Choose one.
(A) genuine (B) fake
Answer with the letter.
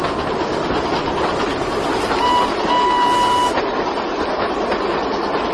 A